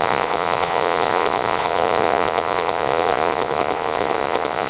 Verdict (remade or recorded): remade